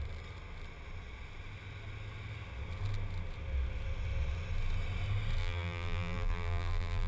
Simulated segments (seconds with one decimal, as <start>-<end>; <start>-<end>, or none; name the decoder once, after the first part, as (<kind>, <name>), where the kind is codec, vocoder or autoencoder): 5.4-7.1 (vocoder, BigVGAN v2)